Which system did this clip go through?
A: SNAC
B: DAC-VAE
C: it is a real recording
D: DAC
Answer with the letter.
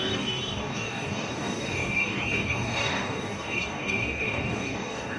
D